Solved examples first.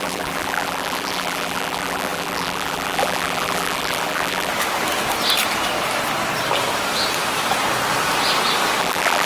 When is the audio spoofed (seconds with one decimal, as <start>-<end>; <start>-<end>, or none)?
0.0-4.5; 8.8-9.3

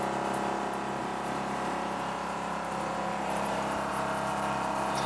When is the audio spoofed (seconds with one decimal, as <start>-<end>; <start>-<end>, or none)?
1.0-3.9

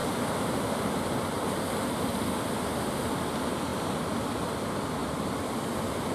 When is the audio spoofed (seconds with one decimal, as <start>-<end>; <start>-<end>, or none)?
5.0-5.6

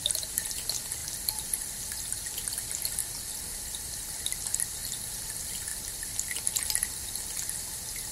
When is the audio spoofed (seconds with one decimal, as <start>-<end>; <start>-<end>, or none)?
1.0-1.6; 3.0-4.9; 5.7-6.4

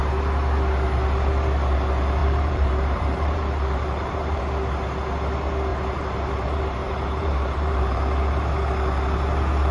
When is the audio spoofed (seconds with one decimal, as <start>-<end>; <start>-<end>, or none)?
2.2-4.4; 5.7-8.0

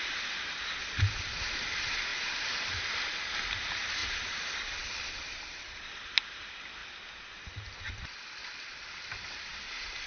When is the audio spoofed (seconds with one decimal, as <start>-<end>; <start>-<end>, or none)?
0.0-6.8; 9.3-10.1